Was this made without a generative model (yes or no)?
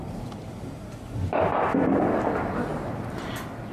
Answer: yes